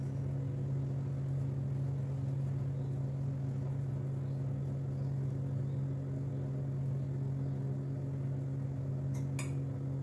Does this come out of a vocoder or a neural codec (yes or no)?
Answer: no